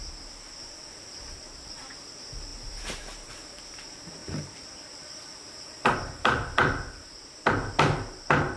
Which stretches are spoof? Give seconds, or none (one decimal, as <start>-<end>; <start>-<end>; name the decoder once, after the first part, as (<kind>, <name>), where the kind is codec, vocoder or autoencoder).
1.2-1.8 (vocoder, BigVGAN v2); 2.5-3.6; 4.2-8.6